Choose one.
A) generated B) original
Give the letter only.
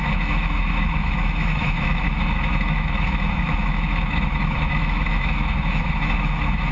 A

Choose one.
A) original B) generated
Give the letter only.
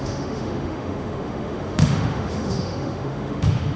B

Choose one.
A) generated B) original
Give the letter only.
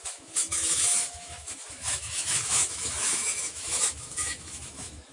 A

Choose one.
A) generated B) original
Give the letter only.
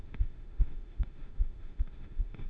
A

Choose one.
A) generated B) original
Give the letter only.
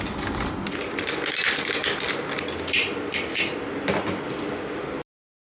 B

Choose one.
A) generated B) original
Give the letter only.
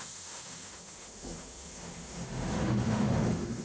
A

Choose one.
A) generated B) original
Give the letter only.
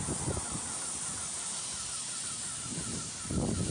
B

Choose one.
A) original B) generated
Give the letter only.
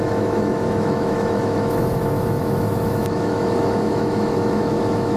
B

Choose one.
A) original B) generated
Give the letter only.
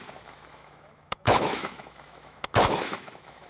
B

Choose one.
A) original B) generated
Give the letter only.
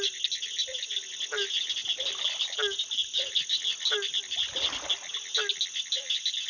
A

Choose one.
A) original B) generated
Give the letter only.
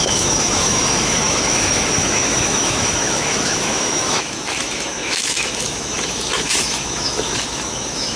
B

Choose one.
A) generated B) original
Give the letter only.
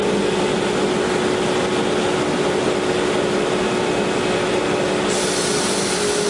B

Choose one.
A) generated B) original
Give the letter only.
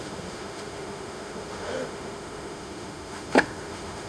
A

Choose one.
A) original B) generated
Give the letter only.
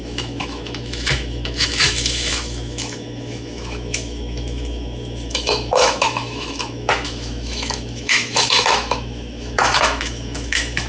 B